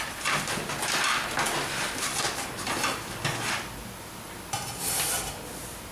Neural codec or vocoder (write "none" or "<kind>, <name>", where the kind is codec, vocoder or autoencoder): none